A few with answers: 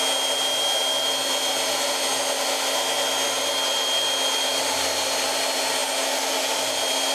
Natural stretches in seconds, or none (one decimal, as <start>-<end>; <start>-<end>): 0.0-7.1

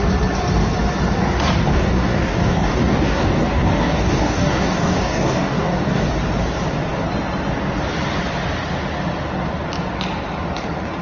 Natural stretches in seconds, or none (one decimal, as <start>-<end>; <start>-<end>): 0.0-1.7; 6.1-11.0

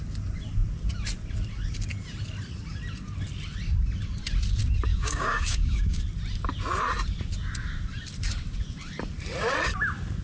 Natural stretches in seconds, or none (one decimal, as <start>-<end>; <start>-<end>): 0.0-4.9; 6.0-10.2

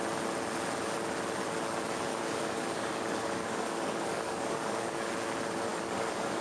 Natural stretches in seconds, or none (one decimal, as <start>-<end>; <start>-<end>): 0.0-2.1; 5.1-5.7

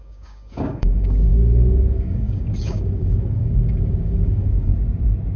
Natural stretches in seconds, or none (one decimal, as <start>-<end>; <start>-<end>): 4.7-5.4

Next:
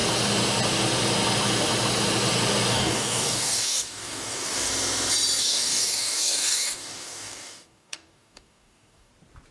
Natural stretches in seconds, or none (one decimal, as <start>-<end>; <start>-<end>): 0.0-2.7; 4.7-5.4; 9.1-9.5

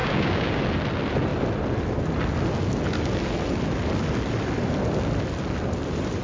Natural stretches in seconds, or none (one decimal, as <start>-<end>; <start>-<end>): 0.6-6.2

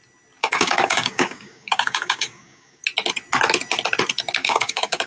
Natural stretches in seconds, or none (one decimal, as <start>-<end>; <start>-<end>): 0.0-0.4; 2.8-4.4